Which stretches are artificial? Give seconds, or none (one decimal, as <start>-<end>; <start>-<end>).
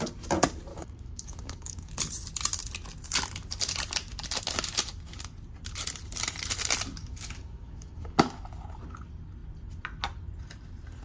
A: 0.7-1.9; 7.0-8.2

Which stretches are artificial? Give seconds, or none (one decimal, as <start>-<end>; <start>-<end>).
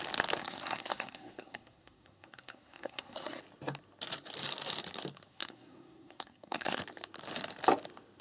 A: 0.4-3.4; 5.3-6.8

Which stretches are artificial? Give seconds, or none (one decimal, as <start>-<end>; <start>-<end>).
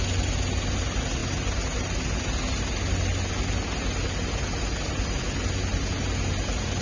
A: none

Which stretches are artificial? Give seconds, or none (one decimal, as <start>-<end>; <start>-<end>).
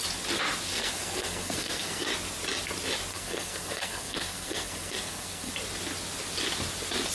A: 0.7-2.1; 3.1-5.5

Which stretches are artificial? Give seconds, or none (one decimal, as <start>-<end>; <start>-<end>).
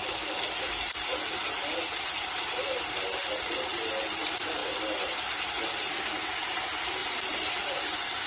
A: none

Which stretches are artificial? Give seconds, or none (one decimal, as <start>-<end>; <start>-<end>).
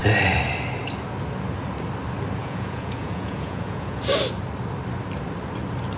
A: 2.4-4.0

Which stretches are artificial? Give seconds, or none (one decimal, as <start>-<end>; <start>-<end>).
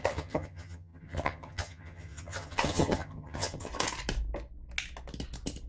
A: 0.0-3.7